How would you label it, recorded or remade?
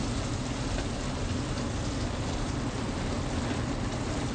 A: recorded